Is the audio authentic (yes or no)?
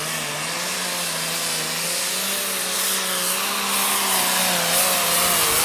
yes